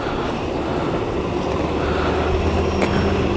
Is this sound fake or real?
real